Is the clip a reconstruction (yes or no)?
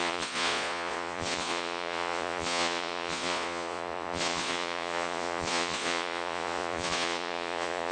yes